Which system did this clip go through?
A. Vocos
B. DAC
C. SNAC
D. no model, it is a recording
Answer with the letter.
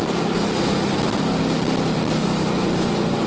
D